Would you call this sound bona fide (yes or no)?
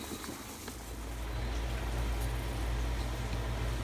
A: yes